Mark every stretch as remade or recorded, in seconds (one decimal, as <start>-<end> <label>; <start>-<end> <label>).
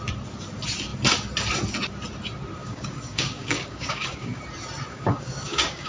0.0-2.6 recorded; 2.6-4.4 remade; 4.4-4.9 recorded; 4.9-5.9 remade